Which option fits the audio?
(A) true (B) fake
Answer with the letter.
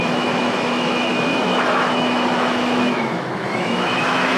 B